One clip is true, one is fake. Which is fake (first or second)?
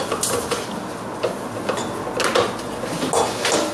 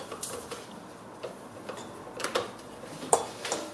second